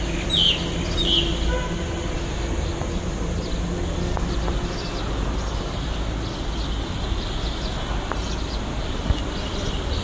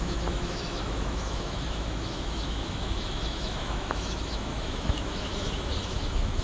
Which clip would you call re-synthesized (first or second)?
second